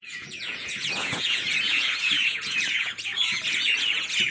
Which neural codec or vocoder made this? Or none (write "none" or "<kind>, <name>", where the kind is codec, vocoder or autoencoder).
vocoder, Vocos